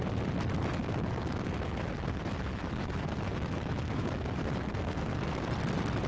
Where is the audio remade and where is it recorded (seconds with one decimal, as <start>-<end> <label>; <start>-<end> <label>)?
0.0-0.8 recorded; 0.8-1.9 remade; 1.9-2.5 recorded; 2.5-5.0 remade; 5.0-6.1 recorded